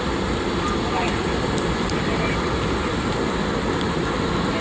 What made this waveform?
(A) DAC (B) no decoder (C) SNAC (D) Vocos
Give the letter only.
B